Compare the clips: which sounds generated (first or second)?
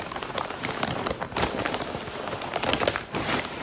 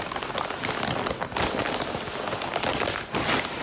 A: first